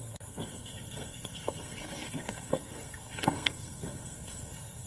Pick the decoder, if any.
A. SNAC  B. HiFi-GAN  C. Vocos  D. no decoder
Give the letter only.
A